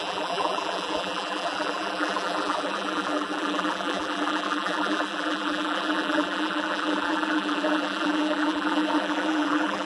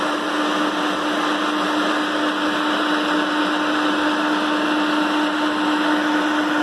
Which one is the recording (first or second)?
second